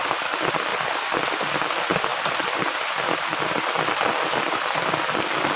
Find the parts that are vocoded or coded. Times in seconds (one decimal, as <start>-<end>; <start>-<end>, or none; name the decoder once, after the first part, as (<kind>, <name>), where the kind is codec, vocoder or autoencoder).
none

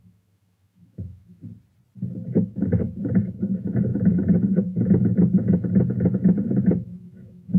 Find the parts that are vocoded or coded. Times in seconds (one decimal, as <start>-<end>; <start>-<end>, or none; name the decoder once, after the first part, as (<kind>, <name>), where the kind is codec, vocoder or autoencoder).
0.0-1.4 (autoencoder, DAC-VAE); 2.3-7.6

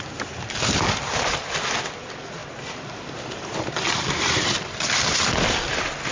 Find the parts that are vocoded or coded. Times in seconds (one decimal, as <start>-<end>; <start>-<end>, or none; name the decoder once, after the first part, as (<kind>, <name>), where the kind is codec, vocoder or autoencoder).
none

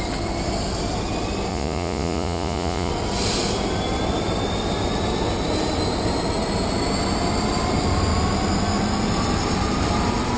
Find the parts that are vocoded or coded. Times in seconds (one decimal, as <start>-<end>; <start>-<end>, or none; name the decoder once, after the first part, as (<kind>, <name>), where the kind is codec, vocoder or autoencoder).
1.5-2.9 (vocoder, Vocos)

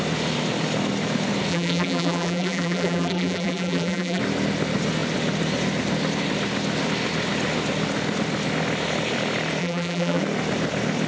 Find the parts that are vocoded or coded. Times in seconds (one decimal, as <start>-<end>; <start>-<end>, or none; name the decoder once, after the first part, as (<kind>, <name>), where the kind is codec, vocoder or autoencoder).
1.5-4.2 (vocoder, BigVGAN v2); 9.6-10.2